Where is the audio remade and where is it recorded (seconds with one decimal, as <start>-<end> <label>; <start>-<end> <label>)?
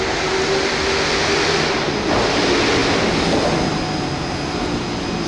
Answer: 0.0-5.3 recorded